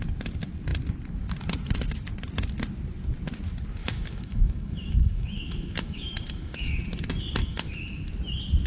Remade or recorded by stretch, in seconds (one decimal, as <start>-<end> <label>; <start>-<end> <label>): 0.0-3.8 recorded; 3.8-6.8 remade; 6.8-7.4 recorded; 7.4-8.1 remade; 8.1-8.7 recorded